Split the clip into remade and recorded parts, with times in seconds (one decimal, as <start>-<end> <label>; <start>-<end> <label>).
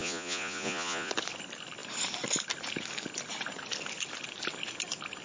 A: 0.0-1.1 remade; 1.1-5.2 recorded